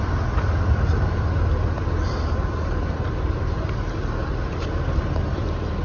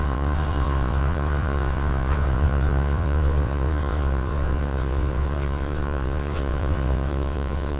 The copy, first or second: second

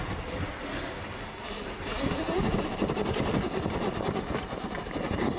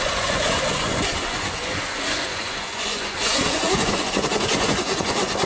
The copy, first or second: second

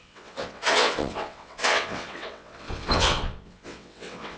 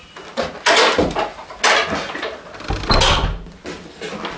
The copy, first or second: first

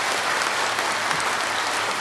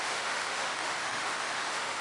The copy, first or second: second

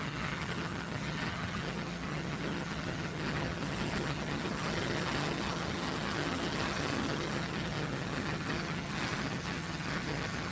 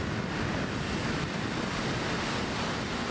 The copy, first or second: first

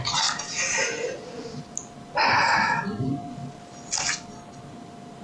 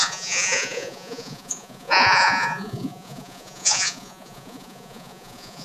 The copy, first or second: second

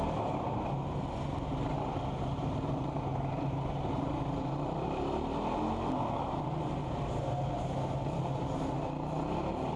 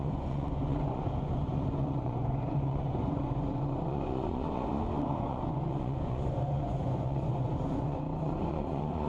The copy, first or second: second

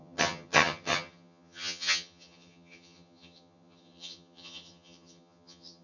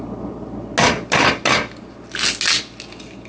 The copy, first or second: first